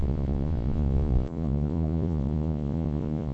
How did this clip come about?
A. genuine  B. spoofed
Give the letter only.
B